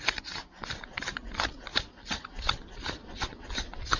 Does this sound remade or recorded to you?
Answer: recorded